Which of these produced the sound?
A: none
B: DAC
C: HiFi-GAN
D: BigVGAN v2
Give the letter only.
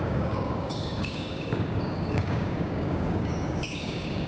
B